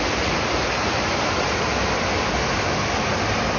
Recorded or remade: recorded